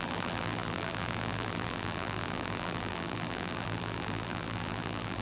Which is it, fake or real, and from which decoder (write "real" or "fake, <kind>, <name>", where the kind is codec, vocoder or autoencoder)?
fake, vocoder, BigVGAN v2